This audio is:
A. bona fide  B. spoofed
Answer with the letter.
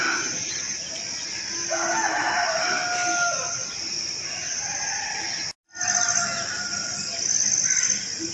A